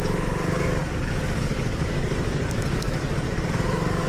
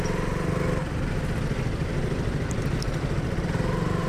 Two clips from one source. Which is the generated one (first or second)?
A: first